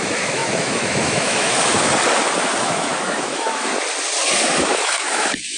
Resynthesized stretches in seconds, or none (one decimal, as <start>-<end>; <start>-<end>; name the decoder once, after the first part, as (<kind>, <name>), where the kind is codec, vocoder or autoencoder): 0.0-1.9 (autoencoder, DAC-VAE); 2.6-3.7; 4.5-5.6

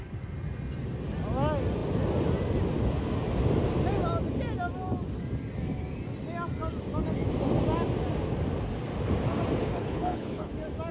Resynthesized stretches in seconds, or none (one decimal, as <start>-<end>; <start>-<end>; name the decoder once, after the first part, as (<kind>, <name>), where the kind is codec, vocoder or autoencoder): 9.6-10.5 (codec, HILCodec)